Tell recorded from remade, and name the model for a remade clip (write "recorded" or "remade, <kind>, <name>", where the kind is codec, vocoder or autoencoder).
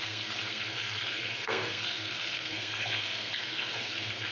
remade, codec, SNAC